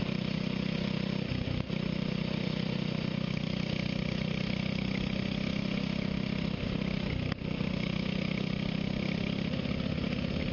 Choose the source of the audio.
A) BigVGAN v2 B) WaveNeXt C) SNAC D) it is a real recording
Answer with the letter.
D